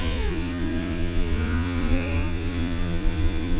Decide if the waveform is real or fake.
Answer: fake